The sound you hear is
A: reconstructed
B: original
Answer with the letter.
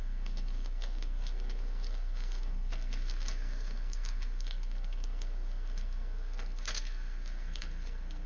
A